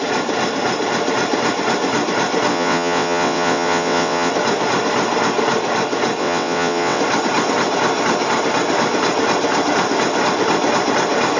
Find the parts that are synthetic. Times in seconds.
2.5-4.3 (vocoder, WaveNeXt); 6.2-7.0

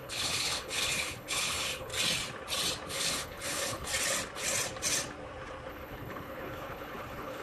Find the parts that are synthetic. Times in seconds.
0.0-1.9 (codec, HILCodec); 2.9-3.9; 5.7-7.4